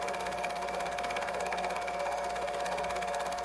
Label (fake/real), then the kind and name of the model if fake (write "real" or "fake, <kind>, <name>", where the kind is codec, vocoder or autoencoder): fake, codec, SNAC